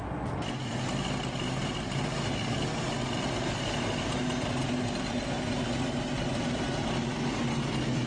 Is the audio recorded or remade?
recorded